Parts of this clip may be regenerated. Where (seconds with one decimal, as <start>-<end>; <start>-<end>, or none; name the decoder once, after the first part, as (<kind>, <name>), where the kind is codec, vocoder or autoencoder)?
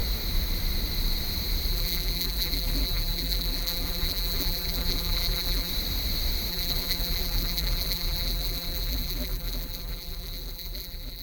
1.7-5.7 (vocoder, BigVGAN v2); 6.5-11.2